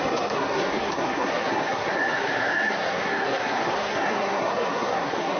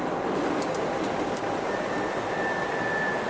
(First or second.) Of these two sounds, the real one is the second